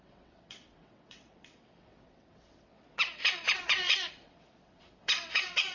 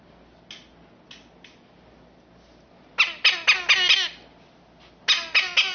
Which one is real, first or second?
second